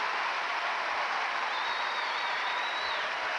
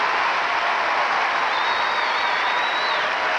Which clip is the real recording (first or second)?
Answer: second